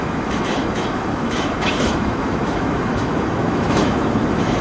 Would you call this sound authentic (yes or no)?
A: no